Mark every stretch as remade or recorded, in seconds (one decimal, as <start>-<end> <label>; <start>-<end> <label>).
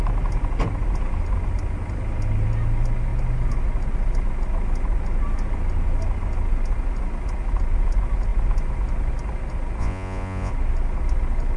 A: 0.0-9.8 recorded; 9.8-10.5 remade; 10.5-11.6 recorded